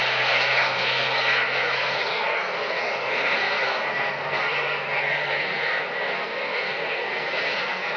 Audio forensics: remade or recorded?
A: remade